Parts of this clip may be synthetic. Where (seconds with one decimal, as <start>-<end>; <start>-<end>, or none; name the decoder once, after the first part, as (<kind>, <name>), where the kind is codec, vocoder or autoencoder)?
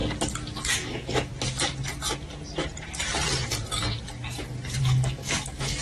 0.7-1.3 (autoencoder, DAC-VAE); 4.8-5.8